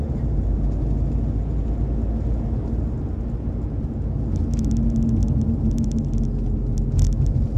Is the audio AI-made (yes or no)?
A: no